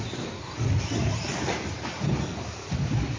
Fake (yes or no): no